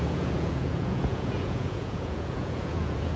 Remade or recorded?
remade